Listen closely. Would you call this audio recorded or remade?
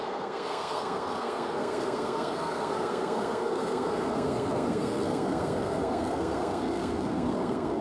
remade